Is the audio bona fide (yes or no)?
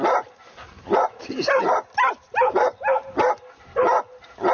yes